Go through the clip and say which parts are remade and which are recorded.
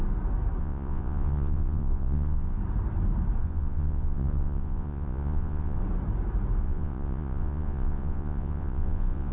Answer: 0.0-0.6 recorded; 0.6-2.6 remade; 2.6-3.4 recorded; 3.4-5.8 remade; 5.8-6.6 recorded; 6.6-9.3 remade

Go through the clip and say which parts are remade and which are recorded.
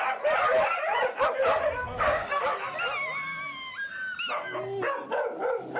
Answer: 0.0-1.8 recorded; 1.8-2.4 remade; 2.4-5.8 recorded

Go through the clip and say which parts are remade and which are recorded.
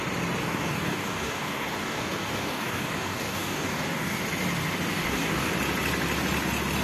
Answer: 0.0-0.4 recorded; 0.4-4.2 remade; 4.2-4.9 recorded; 4.9-5.5 remade; 5.5-6.8 recorded